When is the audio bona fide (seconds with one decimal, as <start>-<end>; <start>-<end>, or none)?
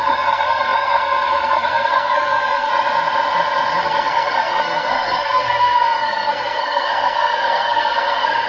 2.7-3.8